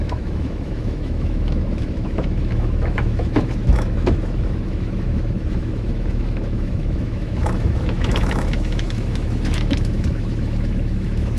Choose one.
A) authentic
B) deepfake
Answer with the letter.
B